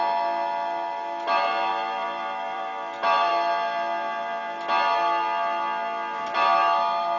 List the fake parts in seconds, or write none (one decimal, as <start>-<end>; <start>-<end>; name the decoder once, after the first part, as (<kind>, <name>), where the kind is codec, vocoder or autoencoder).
1.7-3.3 (vocoder, BigVGAN v2)